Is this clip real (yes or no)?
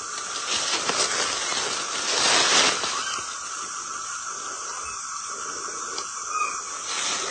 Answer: yes